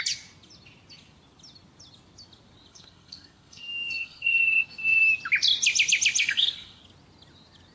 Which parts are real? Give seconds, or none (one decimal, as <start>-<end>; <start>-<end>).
0.0-2.7; 5.0-6.2; 6.8-7.7